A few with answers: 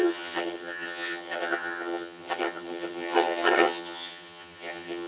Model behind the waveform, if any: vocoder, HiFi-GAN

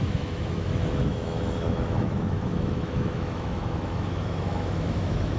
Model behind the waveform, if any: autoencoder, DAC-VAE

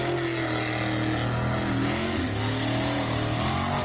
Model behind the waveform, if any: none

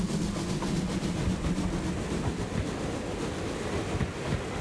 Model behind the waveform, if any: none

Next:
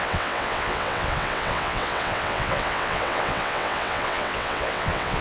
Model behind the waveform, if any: vocoder, WaveNeXt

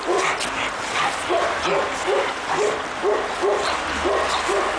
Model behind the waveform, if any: none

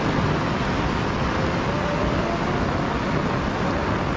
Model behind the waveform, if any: none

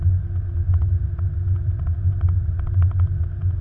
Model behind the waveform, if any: none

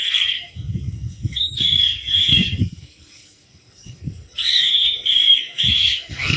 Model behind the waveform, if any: codec, SNAC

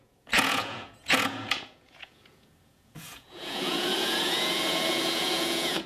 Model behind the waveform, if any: vocoder, Vocos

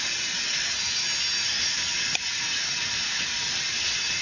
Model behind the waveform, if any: none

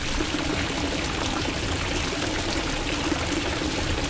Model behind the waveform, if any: none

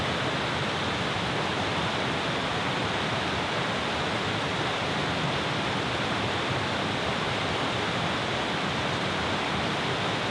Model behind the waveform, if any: none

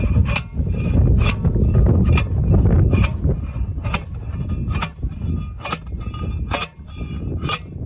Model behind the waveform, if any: none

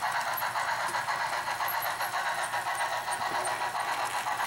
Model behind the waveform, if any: none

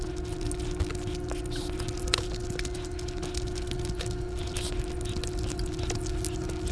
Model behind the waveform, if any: none